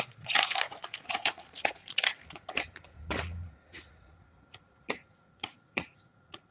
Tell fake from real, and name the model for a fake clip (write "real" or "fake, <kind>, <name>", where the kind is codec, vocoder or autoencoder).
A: fake, vocoder, Vocos